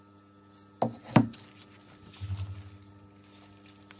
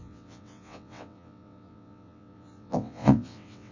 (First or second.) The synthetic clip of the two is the second